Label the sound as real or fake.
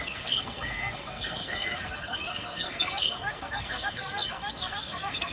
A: fake